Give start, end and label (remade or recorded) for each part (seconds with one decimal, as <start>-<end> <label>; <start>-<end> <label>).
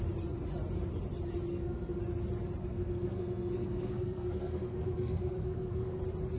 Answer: 0.0-1.5 recorded; 1.5-2.0 remade; 2.0-2.6 recorded; 2.6-6.0 remade; 6.0-6.4 recorded